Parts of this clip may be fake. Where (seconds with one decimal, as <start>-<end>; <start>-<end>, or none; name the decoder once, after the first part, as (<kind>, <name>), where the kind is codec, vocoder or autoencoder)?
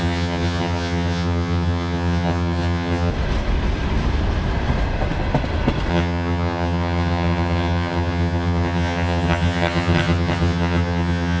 0.0-3.1 (vocoder, HiFi-GAN); 5.9-11.4